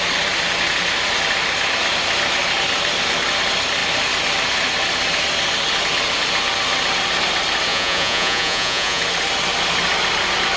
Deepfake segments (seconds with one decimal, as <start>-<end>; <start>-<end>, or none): 7.7-9.0